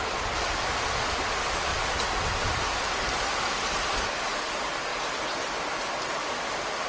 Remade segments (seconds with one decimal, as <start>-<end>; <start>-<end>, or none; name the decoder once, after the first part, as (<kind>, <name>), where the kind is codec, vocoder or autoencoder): 1.7-2.8 (vocoder, BigVGAN v2)